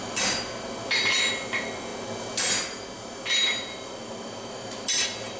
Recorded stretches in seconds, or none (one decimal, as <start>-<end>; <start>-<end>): 0.0-5.4